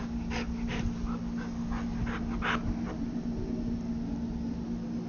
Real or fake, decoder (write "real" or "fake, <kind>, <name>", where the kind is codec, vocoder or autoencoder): real